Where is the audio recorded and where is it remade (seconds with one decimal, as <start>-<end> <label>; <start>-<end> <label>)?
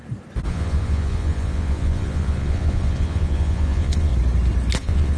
0.0-0.5 recorded; 0.5-4.1 remade; 4.1-4.8 recorded; 4.8-5.2 remade